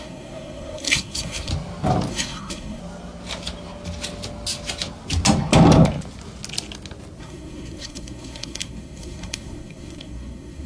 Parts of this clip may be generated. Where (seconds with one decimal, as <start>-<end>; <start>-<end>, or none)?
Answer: 0.0-1.5; 2.1-2.8; 7.2-10.7